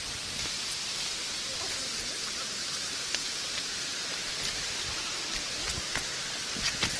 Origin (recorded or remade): recorded